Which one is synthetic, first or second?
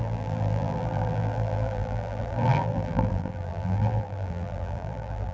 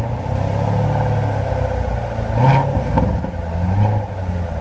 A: first